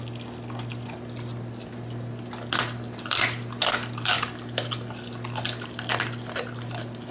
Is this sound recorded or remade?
recorded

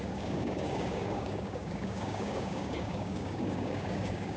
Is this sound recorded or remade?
remade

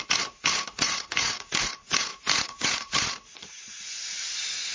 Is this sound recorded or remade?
remade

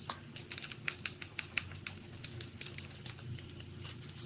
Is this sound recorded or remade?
recorded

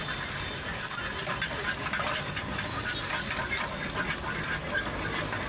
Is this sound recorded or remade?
recorded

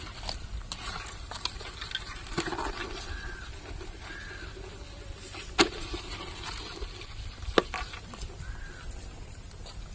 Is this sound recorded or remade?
recorded